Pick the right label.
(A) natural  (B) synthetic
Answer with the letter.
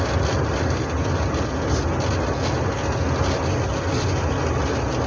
A